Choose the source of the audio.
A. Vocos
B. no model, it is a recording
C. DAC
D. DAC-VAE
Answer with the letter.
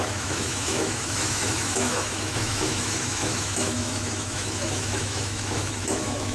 D